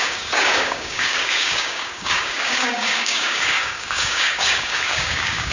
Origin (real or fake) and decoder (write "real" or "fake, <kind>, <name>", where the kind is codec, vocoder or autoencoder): fake, codec, DAC